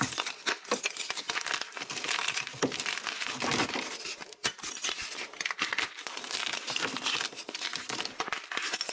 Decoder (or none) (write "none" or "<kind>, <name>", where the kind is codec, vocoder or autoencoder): none